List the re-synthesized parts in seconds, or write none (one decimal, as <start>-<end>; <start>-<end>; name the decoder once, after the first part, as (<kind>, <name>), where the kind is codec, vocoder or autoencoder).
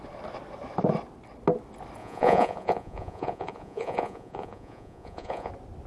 2.0-5.5 (vocoder, Vocos)